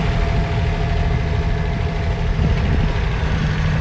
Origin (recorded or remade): recorded